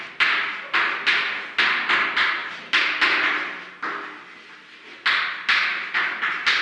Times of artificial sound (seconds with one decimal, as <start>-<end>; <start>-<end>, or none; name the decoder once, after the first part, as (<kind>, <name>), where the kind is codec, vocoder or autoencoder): none

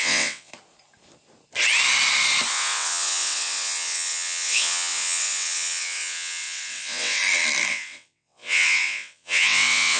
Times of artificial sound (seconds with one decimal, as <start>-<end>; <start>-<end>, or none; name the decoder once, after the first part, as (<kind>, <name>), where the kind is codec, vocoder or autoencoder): 0.0-0.5 (vocoder, WaveNeXt); 2.5-7.2; 7.7-10.0